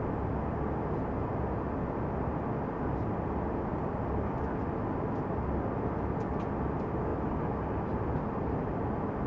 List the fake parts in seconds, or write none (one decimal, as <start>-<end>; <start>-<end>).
none